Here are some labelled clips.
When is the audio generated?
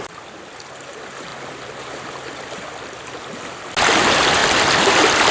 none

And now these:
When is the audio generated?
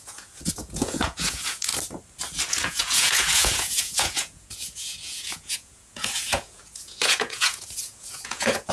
0.0-1.7 (vocoder, Vocos); 2.5-8.7